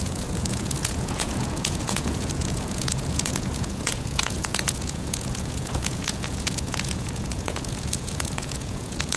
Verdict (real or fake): fake